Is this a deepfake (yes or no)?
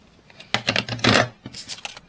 no